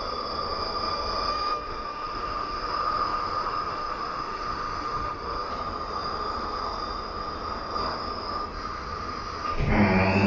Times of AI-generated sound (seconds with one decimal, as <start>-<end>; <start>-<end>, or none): 1.3-5.5